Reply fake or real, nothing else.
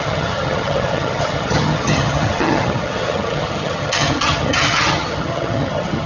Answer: fake